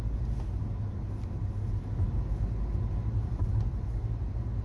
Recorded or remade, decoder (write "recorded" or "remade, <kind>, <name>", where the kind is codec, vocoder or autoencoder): recorded